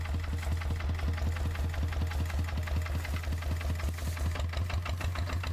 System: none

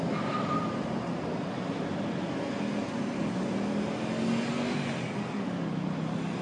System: none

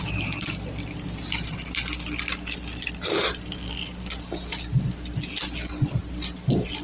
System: none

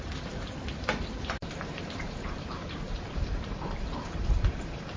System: vocoder, BigVGAN v2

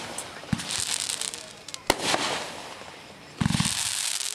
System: none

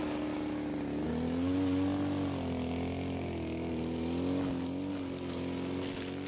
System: none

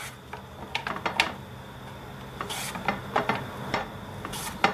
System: none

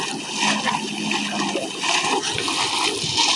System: none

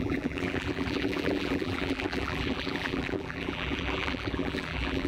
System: vocoder, BigVGAN v2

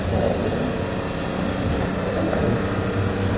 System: none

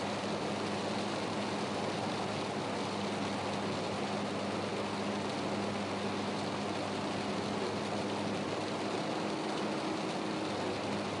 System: none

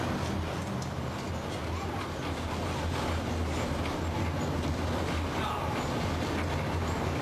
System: none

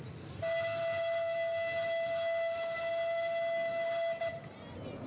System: none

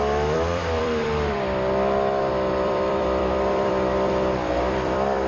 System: vocoder, BigVGAN v2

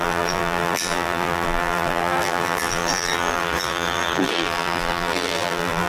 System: vocoder, BigVGAN v2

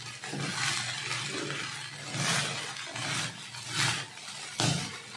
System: none